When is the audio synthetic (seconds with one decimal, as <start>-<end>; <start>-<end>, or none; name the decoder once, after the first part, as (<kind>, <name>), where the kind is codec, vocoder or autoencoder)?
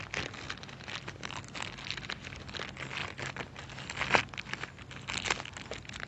none